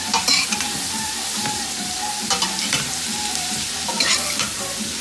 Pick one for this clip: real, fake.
fake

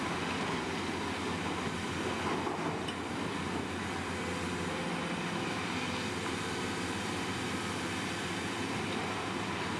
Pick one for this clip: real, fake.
real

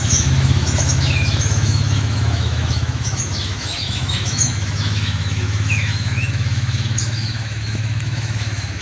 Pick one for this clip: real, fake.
fake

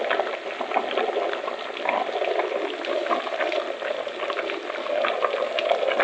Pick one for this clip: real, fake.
real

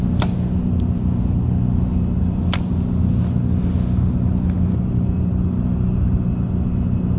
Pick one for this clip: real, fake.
real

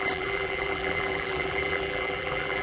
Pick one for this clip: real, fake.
fake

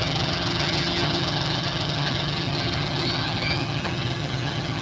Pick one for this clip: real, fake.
fake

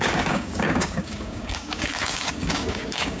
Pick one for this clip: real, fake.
fake